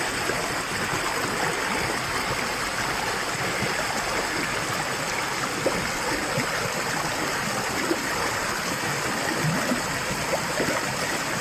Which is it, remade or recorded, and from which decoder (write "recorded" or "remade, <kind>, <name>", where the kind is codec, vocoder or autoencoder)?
recorded